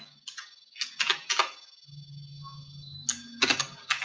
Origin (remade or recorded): recorded